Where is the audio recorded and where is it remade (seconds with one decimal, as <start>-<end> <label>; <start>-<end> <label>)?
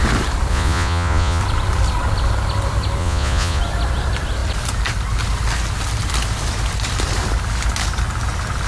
0.0-0.5 recorded; 0.5-1.4 remade; 1.4-3.0 recorded; 3.0-3.6 remade; 3.6-8.7 recorded